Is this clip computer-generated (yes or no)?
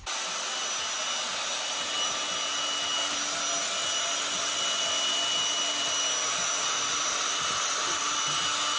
no